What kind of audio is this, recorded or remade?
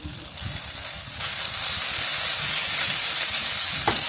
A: recorded